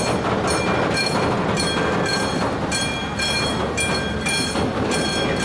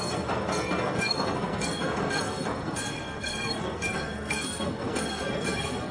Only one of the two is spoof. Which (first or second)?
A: second